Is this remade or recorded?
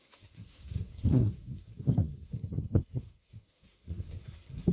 remade